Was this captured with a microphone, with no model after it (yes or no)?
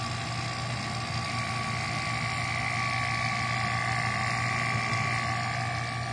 yes